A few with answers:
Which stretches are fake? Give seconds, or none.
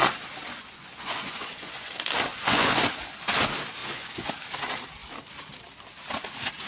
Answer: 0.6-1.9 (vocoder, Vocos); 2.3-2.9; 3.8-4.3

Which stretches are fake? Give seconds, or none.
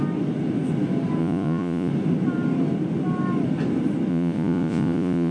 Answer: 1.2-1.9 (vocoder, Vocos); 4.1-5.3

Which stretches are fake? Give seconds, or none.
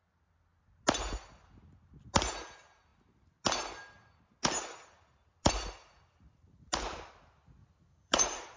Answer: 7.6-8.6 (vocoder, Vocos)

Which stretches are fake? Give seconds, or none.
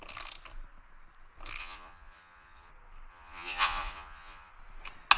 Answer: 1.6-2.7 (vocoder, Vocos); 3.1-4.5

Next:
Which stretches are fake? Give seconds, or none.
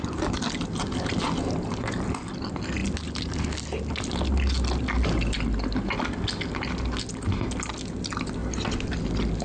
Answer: none